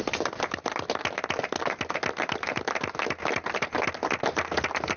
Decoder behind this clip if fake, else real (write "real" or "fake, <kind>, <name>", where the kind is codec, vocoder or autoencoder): real